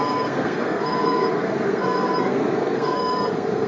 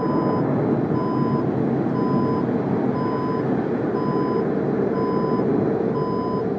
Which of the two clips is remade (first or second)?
first